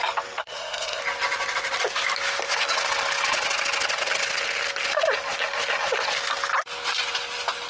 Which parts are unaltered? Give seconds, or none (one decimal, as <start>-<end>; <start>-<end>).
0.0-0.4; 1.0-7.7